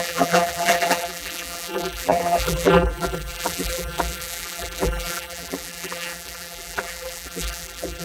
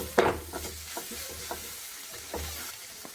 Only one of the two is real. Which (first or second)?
second